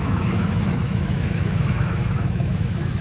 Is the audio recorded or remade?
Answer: remade